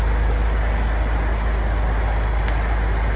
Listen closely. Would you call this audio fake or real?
real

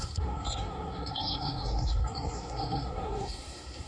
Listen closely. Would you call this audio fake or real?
fake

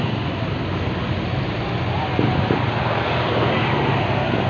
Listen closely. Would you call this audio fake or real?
real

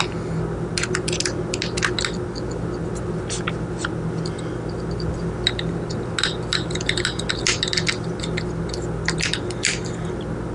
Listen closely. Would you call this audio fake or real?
real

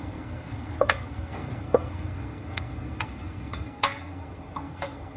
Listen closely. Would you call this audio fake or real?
fake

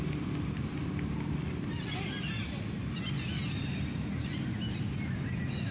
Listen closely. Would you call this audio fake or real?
real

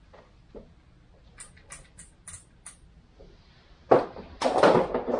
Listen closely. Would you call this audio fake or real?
real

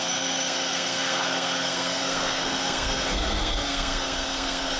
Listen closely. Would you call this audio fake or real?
fake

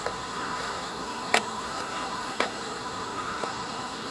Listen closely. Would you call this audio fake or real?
fake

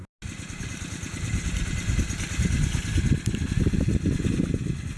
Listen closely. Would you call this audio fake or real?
real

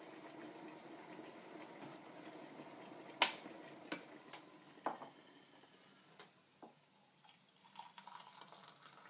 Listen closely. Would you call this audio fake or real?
real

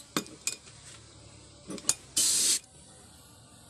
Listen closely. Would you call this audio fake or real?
real